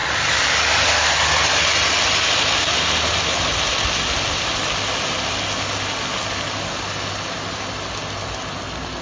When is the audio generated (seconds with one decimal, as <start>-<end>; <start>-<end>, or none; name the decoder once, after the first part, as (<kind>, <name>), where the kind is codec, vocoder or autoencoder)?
none